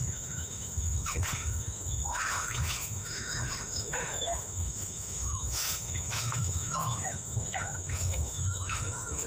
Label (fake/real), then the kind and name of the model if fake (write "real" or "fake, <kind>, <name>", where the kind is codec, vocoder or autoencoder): fake, autoencoder, DAC-VAE